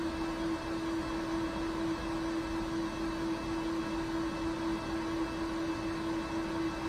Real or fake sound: real